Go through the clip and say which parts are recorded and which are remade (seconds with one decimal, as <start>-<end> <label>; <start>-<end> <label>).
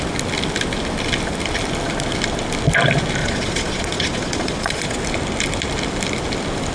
0.0-3.2 recorded; 3.2-5.0 remade; 5.0-6.7 recorded